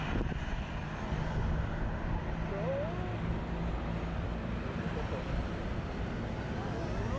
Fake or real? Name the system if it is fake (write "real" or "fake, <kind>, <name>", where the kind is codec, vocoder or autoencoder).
real